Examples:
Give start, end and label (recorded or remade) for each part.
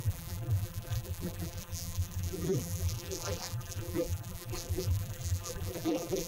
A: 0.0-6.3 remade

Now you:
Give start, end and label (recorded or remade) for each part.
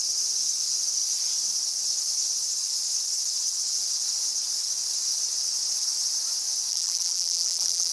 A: 0.0-6.7 recorded; 6.7-7.9 remade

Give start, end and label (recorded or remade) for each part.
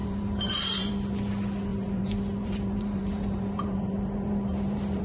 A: 0.0-0.9 remade; 0.9-1.7 recorded; 1.7-5.0 remade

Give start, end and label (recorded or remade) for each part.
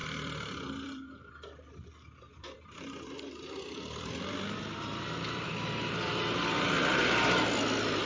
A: 0.0-1.3 remade; 1.3-2.3 recorded; 2.3-7.0 remade; 7.0-8.1 recorded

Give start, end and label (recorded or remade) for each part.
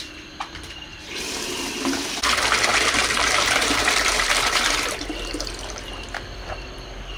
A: 0.0-0.9 recorded; 0.9-1.6 remade; 1.6-2.7 recorded; 2.7-4.4 remade; 4.4-7.2 recorded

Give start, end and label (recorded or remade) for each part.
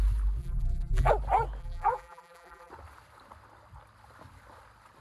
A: 0.0-0.4 recorded; 0.4-1.1 remade; 1.1-1.6 recorded; 1.6-2.7 remade; 2.7-5.0 recorded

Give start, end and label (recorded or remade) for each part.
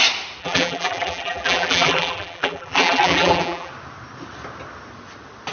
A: 0.0-0.4 recorded; 0.4-3.7 remade; 3.7-5.5 recorded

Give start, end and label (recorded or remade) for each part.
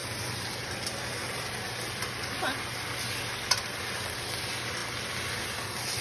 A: 0.0-6.0 recorded